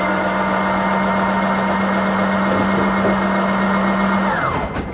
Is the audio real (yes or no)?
yes